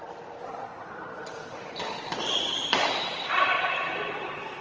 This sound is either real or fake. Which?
real